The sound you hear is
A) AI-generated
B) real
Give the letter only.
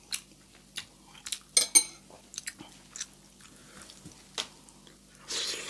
B